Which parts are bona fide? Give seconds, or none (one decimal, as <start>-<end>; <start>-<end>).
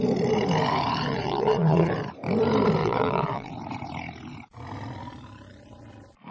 0.0-1.1; 1.9-2.8; 3.5-6.3